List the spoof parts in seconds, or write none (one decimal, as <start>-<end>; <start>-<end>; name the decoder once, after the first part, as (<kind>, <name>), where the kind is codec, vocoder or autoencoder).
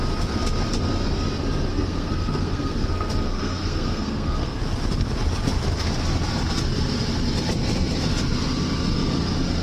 1.7-4.6 (codec, SNAC)